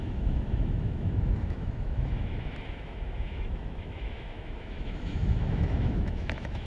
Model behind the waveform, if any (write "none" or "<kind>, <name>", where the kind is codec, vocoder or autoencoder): autoencoder, DAC-VAE